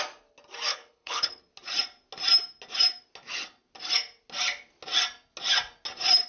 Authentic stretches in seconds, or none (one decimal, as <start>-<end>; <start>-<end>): 0.0-0.7; 1.4-6.3